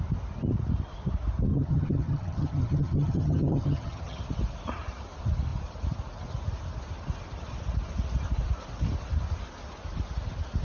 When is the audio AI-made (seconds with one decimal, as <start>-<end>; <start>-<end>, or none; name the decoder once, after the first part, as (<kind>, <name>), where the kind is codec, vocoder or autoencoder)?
1.5-4.2 (vocoder, HiFi-GAN)